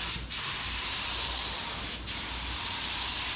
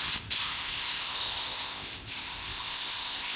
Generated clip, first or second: second